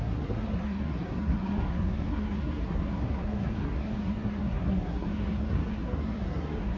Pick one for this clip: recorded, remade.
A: remade